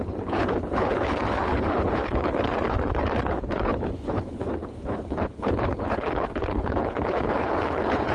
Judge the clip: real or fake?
fake